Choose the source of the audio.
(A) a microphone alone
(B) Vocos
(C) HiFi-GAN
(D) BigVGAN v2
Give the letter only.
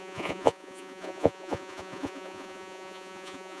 B